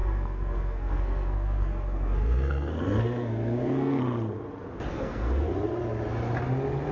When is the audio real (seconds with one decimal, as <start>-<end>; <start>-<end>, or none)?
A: 4.0-4.9; 5.5-6.9